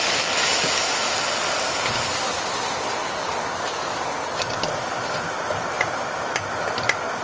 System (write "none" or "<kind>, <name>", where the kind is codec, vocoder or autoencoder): none